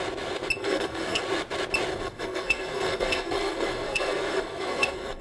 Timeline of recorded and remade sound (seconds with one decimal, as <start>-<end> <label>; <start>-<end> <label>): 0.0-0.6 recorded; 0.6-1.2 remade; 1.2-1.9 recorded; 1.9-5.2 remade

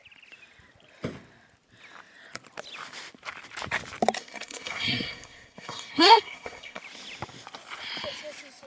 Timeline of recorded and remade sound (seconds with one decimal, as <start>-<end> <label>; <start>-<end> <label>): 0.0-4.2 recorded; 4.2-6.8 remade; 6.8-8.7 recorded

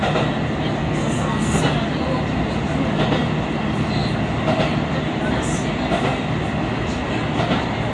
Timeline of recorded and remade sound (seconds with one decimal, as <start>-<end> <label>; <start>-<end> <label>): 0.0-0.8 recorded; 0.8-1.6 remade; 1.6-7.9 recorded

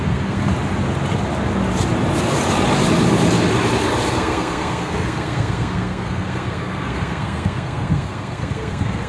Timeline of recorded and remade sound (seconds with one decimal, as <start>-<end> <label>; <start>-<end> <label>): 0.0-0.5 remade; 0.5-4.1 recorded; 4.1-9.1 remade